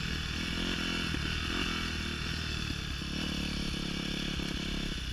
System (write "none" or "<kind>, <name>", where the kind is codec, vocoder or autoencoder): none